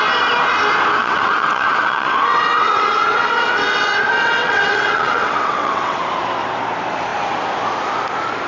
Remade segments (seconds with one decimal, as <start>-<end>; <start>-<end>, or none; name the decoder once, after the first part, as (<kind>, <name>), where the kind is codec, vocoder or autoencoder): 1.0-6.0 (vocoder, WaveNeXt)